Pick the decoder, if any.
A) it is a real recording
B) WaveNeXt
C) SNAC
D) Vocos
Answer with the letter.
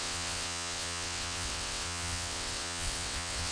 B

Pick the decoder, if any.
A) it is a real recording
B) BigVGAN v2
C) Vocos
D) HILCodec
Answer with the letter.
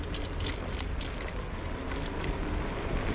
A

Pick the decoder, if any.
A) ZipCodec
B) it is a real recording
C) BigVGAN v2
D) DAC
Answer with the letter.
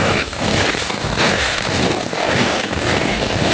D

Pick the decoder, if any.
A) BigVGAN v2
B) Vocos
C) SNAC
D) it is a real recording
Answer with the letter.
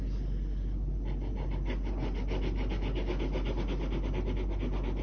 D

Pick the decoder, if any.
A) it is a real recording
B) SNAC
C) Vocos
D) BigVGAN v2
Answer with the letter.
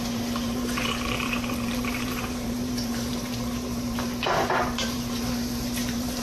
D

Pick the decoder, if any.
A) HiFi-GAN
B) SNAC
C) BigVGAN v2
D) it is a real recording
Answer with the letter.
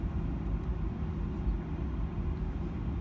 D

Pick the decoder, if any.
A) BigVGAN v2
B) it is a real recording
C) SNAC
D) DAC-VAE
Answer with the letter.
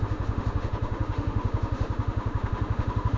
D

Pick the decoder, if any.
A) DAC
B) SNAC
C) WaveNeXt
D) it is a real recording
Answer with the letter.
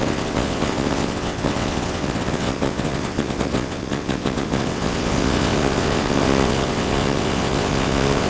C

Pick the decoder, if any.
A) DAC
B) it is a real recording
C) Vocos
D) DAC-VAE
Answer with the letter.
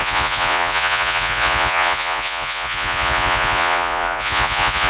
C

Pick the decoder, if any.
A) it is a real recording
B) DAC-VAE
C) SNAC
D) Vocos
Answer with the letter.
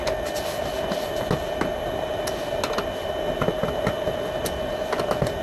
A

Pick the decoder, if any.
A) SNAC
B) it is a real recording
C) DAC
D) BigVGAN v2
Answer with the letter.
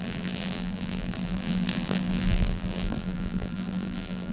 D